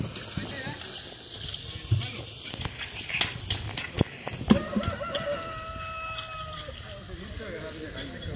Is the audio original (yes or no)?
yes